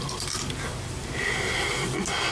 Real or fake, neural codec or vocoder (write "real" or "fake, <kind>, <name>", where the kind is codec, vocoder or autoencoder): real